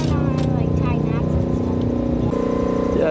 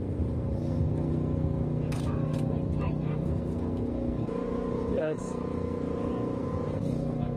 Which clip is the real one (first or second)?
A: first